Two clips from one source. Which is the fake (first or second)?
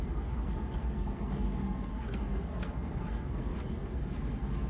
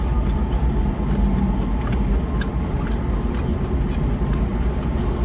first